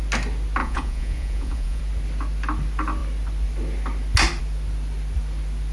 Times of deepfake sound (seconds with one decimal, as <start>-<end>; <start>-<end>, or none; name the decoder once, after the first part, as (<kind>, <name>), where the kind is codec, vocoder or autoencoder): 0.6-1.8 (vocoder, Vocos)